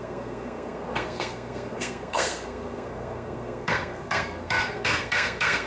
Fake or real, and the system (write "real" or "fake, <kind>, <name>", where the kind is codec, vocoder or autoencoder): fake, codec, SNAC